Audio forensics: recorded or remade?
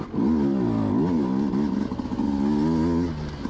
recorded